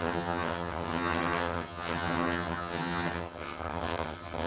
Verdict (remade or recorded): remade